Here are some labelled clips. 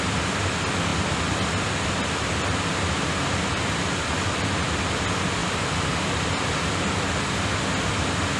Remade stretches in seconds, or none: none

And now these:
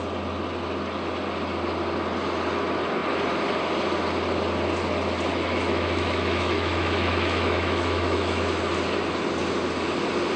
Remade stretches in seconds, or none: 5.3-8.6 (autoencoder, DAC-VAE)

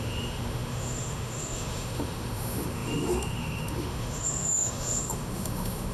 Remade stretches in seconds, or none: 0.0-5.9 (autoencoder, DAC-VAE)